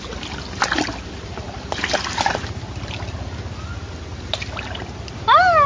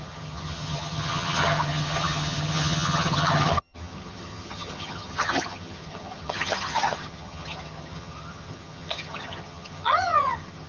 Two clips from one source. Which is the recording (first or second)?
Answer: first